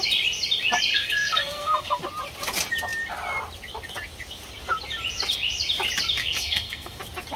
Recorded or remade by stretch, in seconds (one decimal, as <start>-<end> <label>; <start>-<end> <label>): 0.0-0.9 recorded; 0.9-2.0 remade; 2.0-6.2 recorded; 6.2-7.0 remade; 7.0-7.4 recorded